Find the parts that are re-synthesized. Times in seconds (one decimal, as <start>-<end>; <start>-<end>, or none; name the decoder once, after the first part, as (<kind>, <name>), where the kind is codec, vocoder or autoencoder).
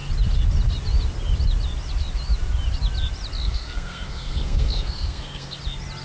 3.4-5.6 (codec, SNAC)